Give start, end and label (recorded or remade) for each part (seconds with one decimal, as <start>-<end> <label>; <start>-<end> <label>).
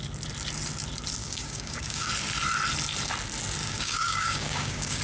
0.0-1.2 recorded; 1.2-2.1 remade; 2.1-3.6 recorded; 3.6-5.0 remade